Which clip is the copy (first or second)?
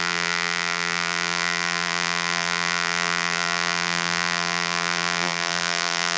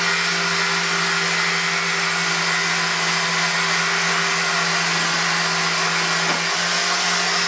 first